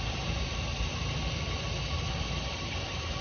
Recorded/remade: recorded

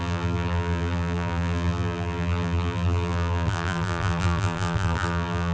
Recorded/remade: remade